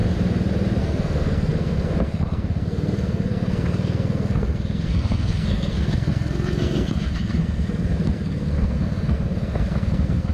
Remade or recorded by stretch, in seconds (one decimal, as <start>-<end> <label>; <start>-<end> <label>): 0.0-0.8 recorded; 0.8-10.3 remade